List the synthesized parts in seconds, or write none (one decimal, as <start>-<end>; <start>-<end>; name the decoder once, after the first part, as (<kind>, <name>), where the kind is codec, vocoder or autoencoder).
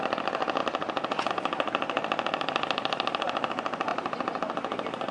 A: none